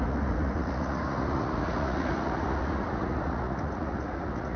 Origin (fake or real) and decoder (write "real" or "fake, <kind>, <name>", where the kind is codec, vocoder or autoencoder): fake, vocoder, Vocos